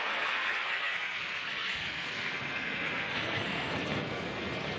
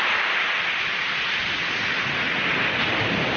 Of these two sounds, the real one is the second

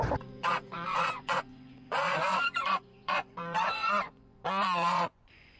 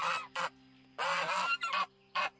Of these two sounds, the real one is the second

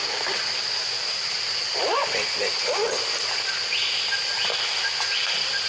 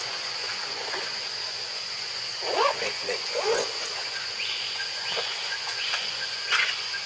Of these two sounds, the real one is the first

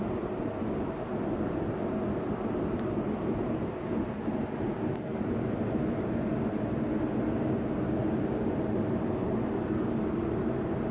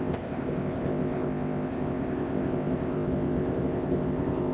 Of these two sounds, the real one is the first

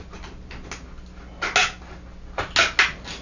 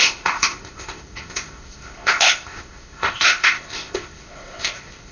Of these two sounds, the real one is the first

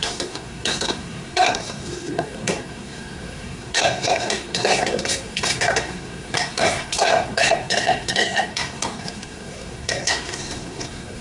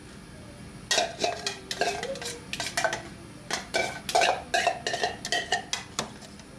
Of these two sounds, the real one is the second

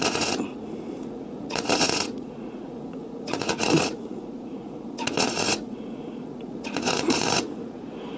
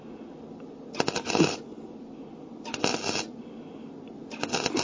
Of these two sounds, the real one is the second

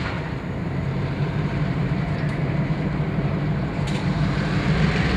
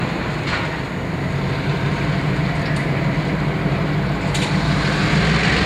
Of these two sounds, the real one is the second